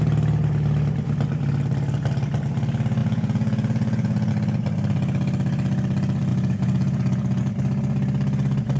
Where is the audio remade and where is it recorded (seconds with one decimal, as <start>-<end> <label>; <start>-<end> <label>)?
0.0-3.0 recorded; 3.0-4.3 remade; 4.3-6.3 recorded; 6.3-7.4 remade; 7.4-8.8 recorded